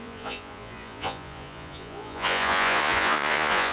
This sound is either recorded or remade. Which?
remade